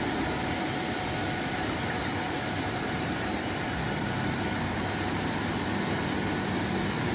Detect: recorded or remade recorded